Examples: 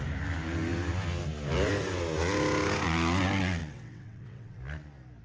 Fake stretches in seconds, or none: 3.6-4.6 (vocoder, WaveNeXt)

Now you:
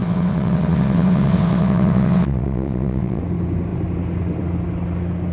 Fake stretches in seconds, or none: 0.0-3.2 (vocoder, WaveNeXt)

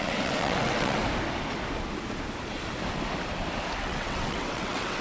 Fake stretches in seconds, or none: 0.0-1.0 (vocoder, WaveNeXt); 3.8-5.0

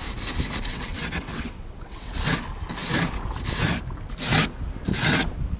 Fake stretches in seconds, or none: 0.7-2.1 (vocoder, WaveNeXt)

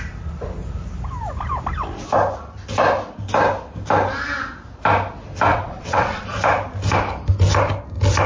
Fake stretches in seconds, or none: 5.5-6.2 (vocoder, WaveNeXt)

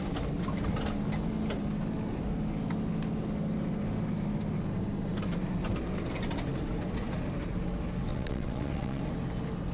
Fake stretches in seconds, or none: 8.1-9.0 (vocoder, WaveNeXt)

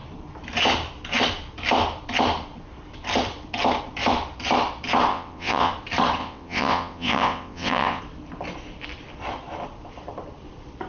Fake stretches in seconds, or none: 5.1-5.7 (vocoder, WaveNeXt); 6.2-8.0

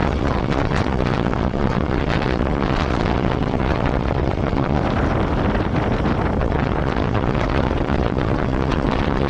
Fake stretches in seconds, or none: 0.0-4.8 (vocoder, WaveNeXt); 6.4-9.3